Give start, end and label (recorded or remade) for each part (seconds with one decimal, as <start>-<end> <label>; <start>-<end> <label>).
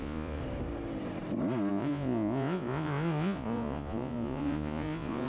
0.0-0.4 remade; 0.4-1.7 recorded; 1.7-5.3 remade